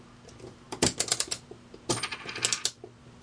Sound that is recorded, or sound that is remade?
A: recorded